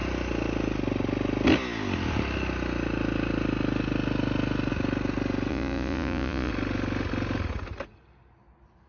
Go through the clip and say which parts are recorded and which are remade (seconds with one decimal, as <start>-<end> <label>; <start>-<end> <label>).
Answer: 0.0-5.5 recorded; 5.5-6.5 remade; 6.5-8.9 recorded